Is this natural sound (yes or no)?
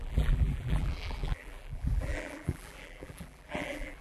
no